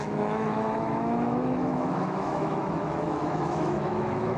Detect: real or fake fake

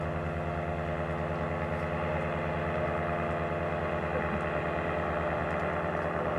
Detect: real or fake real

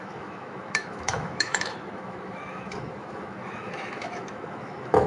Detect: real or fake fake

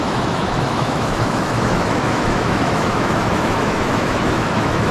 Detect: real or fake fake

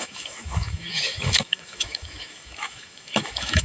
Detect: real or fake fake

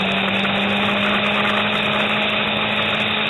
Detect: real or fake real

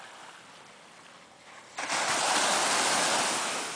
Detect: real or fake real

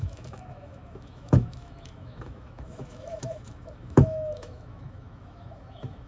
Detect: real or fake fake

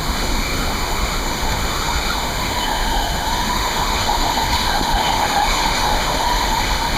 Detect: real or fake fake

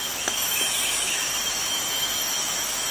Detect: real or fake fake